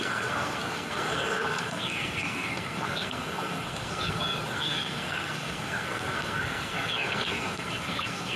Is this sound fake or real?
fake